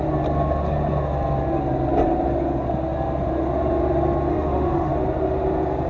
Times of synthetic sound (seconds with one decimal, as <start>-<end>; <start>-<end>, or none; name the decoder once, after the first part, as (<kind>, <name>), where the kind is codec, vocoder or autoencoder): 4.3-4.9 (autoencoder, DAC-VAE)